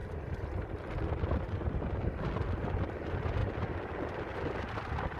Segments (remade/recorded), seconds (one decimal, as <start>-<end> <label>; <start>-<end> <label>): 0.0-2.0 remade; 2.0-3.4 recorded; 3.4-5.2 remade